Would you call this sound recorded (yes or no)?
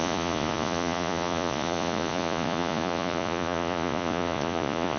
no